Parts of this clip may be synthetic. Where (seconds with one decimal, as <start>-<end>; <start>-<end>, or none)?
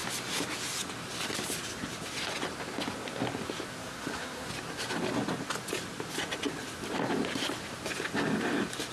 3.8-4.5